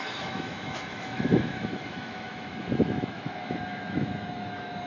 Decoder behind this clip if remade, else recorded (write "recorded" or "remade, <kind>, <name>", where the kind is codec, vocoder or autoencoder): remade, autoencoder, DAC-VAE